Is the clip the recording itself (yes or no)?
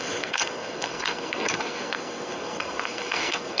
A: no